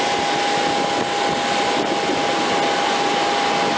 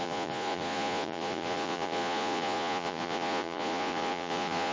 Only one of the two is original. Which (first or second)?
first